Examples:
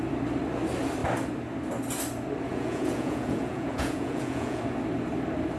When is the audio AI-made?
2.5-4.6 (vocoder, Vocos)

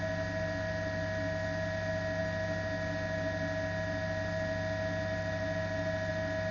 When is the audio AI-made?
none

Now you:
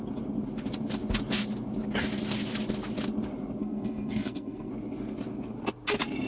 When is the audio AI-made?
3.6-4.7 (codec, SNAC)

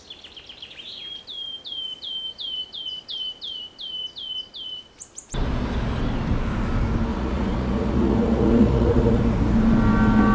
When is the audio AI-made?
7.1-9.2 (vocoder, Vocos)

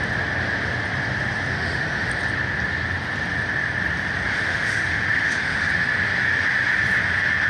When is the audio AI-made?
1.5-2.1 (autoencoder, DAC-VAE); 4.3-5.7

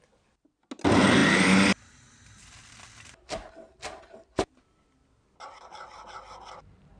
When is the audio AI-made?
none

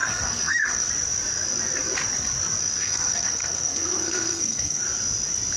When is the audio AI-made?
0.0-0.9 (codec, SNAC); 2.6-4.8

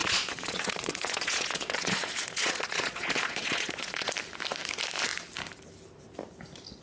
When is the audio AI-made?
0.0-4.1 (vocoder, Vocos)